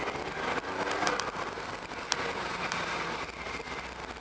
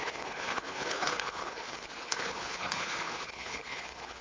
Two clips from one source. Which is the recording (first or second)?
first